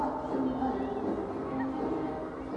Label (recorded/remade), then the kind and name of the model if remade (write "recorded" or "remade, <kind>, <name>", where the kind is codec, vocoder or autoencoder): recorded